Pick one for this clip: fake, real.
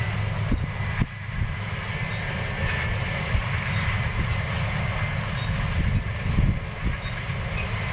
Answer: real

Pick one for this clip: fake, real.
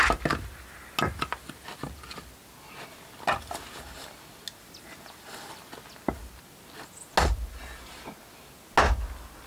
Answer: real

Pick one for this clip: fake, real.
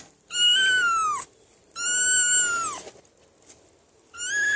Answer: real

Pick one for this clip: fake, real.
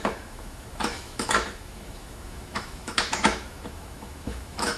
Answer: fake